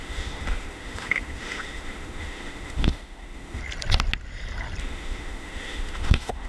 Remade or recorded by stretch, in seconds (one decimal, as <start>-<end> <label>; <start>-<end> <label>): 0.0-3.6 remade; 3.6-4.8 recorded; 4.8-6.5 remade